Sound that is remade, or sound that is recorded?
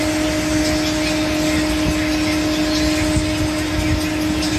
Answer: recorded